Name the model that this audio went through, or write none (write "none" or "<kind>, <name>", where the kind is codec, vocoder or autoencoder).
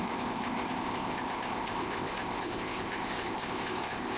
codec, ZipCodec